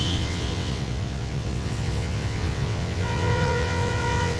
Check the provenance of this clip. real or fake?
fake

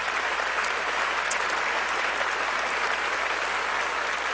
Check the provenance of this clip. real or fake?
real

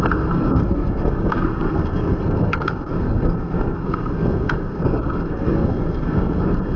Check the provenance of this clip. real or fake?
fake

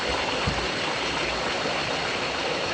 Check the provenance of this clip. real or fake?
real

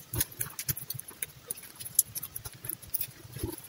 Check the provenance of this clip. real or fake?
real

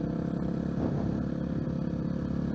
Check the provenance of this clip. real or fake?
real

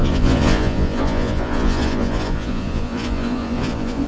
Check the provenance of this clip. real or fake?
fake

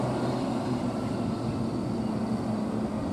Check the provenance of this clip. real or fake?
real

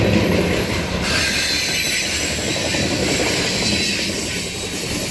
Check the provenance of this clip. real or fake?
real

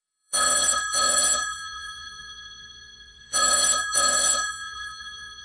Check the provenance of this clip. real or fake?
fake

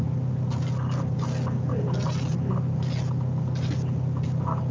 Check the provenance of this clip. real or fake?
real